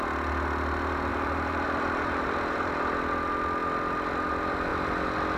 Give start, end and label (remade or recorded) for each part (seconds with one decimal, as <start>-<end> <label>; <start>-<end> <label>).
0.0-1.1 recorded; 1.1-2.8 remade; 2.8-5.4 recorded